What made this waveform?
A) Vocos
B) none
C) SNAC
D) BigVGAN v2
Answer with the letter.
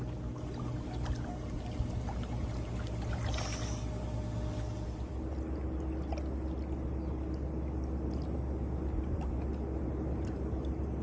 B